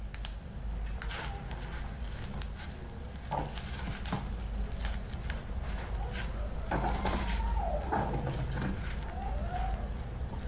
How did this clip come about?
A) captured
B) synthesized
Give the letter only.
A